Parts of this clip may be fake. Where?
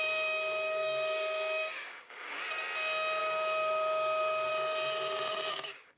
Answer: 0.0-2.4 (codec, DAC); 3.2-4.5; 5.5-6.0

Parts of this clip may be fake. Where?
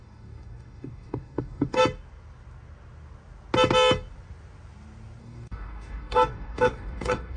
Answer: 0.0-1.8 (codec, DAC); 5.2-7.4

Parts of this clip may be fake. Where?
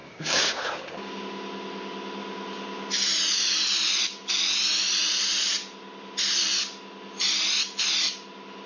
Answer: 0.0-1.2 (codec, DAC)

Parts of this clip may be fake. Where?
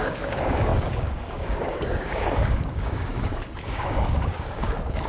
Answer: 0.0-5.1 (codec, DAC)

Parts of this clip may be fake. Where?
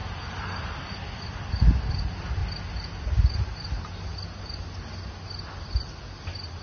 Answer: none